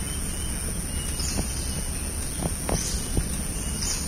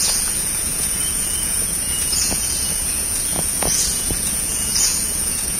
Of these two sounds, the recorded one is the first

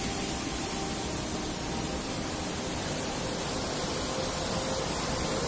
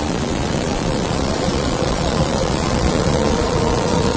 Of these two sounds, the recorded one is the first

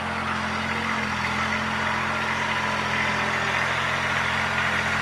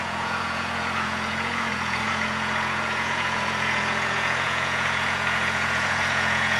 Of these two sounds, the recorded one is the first